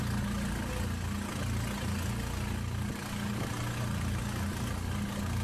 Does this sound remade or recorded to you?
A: recorded